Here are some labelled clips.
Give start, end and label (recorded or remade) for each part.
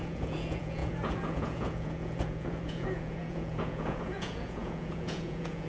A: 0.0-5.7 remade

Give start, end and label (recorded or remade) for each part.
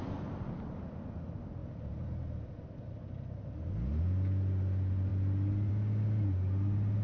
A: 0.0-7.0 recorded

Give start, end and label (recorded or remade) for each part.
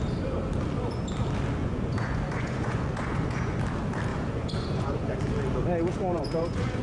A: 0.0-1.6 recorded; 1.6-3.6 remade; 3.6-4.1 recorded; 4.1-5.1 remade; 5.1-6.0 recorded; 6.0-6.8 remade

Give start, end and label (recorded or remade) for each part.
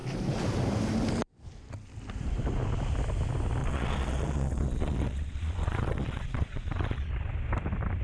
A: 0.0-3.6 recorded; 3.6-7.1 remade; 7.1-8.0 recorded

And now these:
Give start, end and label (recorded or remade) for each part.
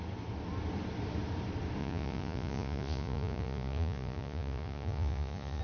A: 0.0-1.8 recorded; 1.8-5.6 remade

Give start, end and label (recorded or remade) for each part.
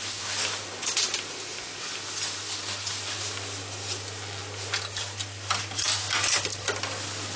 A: 0.0-7.4 recorded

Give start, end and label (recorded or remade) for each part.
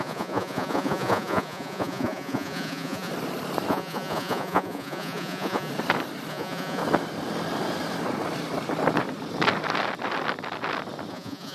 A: 0.0-3.1 remade; 3.1-3.7 recorded; 3.7-5.7 remade; 5.7-6.3 recorded; 6.3-6.8 remade; 6.8-11.1 recorded; 11.1-11.5 remade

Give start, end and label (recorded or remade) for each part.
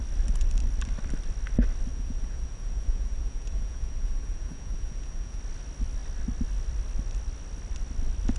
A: 0.0-1.9 recorded; 1.9-5.4 remade; 5.4-8.4 recorded